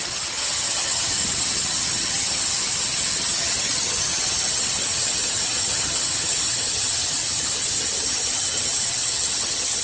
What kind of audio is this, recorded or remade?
remade